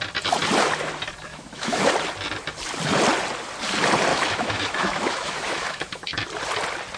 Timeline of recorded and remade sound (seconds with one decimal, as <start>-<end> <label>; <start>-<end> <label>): 0.0-1.3 recorded; 1.3-1.9 remade; 1.9-4.1 recorded; 4.1-6.2 remade; 6.2-7.0 recorded